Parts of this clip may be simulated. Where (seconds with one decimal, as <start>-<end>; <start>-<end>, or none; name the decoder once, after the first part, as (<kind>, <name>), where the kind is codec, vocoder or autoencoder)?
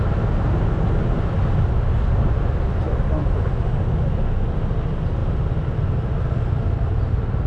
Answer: none